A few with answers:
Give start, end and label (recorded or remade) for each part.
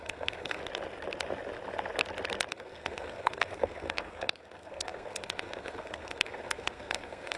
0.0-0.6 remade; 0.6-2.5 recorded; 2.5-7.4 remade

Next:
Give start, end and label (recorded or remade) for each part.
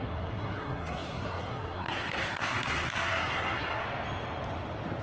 0.0-3.8 remade; 3.8-5.0 recorded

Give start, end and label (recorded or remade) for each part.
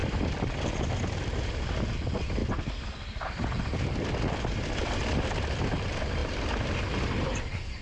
0.0-1.5 remade; 1.5-2.4 recorded; 2.4-5.6 remade; 5.6-7.8 recorded